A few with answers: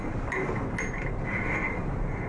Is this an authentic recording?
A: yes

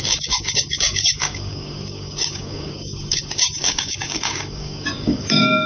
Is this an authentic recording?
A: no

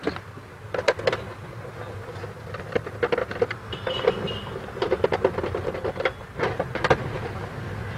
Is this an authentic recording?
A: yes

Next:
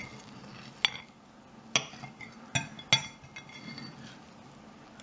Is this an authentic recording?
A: yes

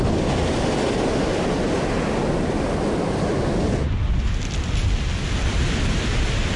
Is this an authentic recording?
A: yes